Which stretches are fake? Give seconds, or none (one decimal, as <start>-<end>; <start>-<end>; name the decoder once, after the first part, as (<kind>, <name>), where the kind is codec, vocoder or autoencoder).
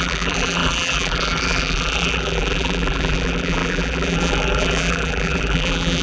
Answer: 0.0-6.0 (vocoder, BigVGAN v2)